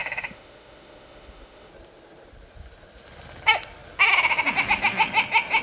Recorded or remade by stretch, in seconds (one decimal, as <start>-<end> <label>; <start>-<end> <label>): 0.0-1.7 remade; 1.7-5.6 recorded